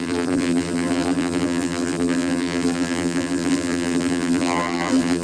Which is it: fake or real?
fake